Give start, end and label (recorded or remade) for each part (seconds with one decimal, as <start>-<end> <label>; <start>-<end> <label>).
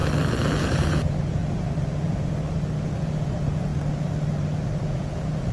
0.0-0.6 recorded; 0.6-1.4 remade; 1.4-3.0 recorded; 3.0-3.7 remade; 3.7-4.8 recorded; 4.8-5.5 remade